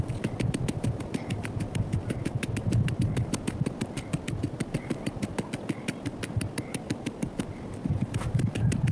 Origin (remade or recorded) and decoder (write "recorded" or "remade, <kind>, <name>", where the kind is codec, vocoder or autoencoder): remade, vocoder, BigVGAN v2